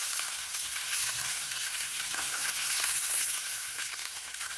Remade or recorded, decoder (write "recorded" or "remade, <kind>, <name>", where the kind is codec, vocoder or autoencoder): remade, codec, SNAC